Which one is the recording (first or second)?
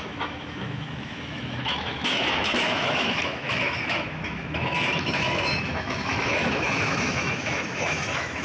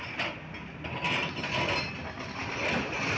second